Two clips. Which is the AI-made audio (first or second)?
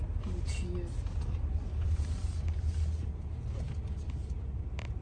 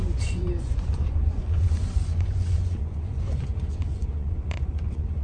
second